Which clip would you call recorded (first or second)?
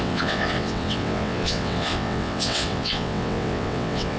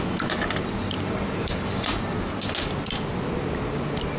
second